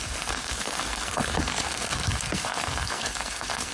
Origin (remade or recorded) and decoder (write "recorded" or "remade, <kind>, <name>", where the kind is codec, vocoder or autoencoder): remade, codec, SNAC